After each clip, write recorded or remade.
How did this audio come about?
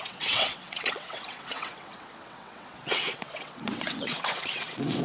remade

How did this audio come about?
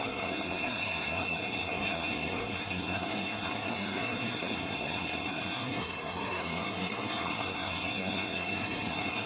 remade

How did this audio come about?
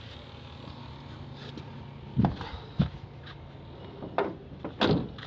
recorded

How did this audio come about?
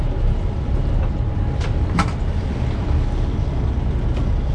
recorded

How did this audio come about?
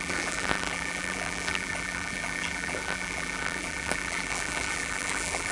remade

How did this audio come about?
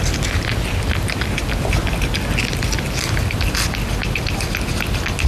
recorded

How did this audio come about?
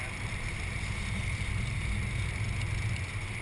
remade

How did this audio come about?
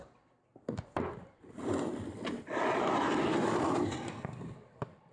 remade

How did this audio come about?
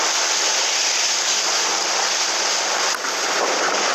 recorded